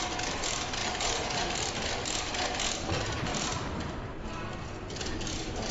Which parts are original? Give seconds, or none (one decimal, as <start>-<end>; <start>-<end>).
0.0-0.8; 1.7-3.3; 4.3-5.7